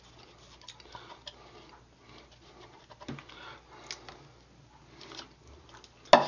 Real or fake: real